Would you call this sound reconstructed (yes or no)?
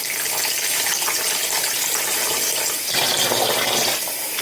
yes